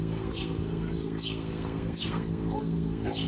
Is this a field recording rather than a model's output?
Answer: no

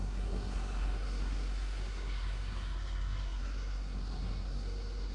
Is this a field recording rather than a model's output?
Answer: no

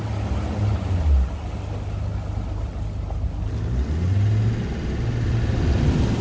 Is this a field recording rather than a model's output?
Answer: yes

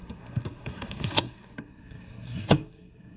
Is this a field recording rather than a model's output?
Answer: no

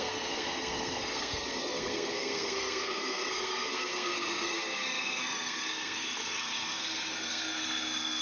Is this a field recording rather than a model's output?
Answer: no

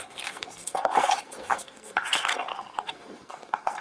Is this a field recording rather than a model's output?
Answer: no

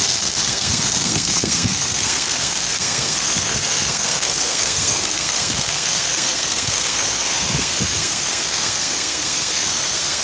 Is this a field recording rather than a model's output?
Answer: no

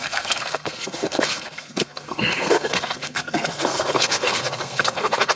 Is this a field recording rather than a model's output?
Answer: no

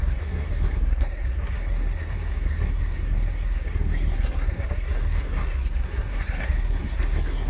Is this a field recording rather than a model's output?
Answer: no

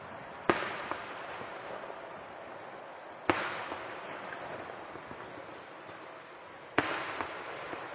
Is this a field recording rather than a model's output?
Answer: yes